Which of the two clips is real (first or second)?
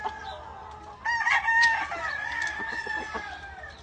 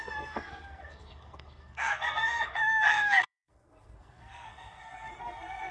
first